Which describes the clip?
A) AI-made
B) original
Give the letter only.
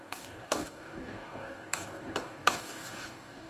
A